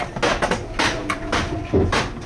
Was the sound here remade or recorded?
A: recorded